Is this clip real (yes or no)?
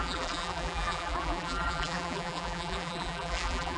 no